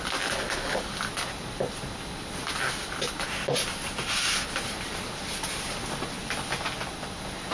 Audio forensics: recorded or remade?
recorded